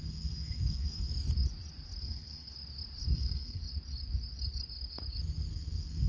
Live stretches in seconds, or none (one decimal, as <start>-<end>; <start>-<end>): 1.1-2.0; 2.5-3.1; 3.6-5.5